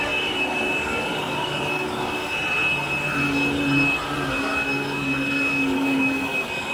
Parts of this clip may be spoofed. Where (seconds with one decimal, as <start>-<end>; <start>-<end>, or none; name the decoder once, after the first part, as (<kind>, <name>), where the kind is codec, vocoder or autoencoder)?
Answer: 0.0-2.2 (codec, DAC); 4.3-6.7

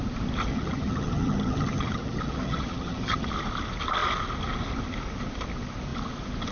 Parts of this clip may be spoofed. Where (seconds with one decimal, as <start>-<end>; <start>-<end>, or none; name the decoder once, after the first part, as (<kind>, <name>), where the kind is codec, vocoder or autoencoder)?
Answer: 0.5-3.3 (vocoder, HiFi-GAN)